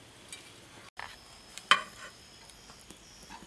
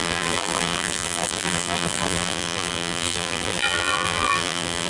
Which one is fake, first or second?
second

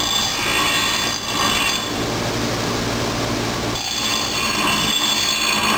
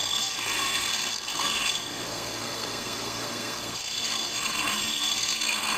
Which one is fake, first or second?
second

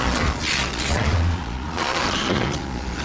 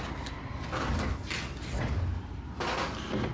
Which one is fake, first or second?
first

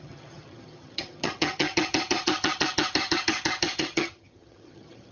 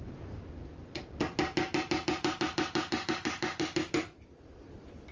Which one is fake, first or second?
first